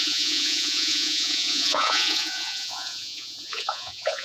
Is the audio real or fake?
fake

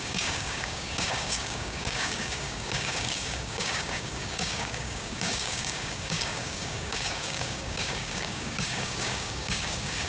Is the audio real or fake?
fake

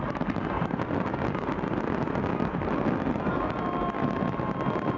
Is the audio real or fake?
real